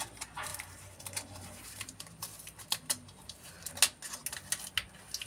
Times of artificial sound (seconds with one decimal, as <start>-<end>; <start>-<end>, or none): 0.5-3.7